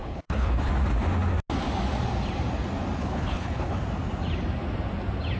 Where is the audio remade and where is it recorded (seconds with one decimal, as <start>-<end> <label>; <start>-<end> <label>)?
0.0-0.7 remade; 0.7-3.0 recorded; 3.0-3.8 remade; 3.8-5.4 recorded